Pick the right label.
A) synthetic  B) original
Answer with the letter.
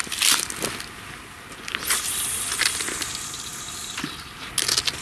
B